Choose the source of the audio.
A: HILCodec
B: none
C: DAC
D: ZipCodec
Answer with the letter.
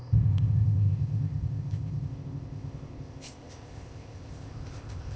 D